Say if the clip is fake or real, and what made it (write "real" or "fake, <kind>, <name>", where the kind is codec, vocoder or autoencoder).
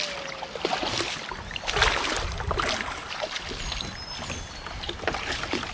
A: real